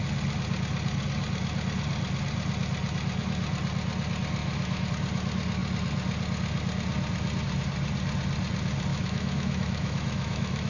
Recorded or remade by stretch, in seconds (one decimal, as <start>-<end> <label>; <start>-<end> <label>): 0.0-4.4 recorded; 4.4-4.9 remade; 4.9-8.9 recorded; 8.9-10.7 remade